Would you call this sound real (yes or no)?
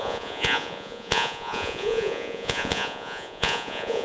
no